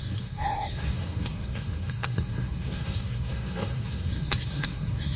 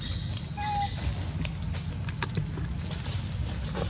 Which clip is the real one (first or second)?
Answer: second